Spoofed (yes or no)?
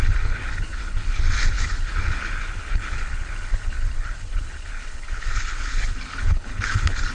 yes